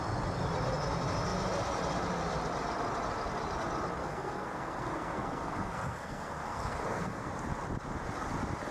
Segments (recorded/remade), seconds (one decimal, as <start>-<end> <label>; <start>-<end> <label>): 0.0-4.0 recorded; 4.0-7.3 remade; 7.3-8.7 recorded